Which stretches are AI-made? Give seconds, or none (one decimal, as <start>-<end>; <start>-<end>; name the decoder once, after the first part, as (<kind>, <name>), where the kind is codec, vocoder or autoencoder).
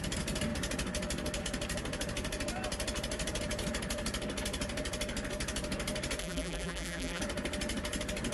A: 6.2-7.2 (vocoder, BigVGAN v2)